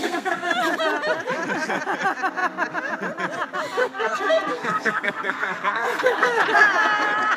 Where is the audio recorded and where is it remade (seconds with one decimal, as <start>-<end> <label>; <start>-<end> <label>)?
0.0-0.5 remade; 0.5-3.8 recorded; 3.8-6.4 remade; 6.4-7.4 recorded